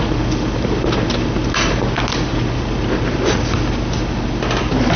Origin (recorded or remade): recorded